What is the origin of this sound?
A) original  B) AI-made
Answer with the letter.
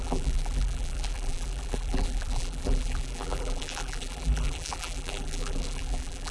B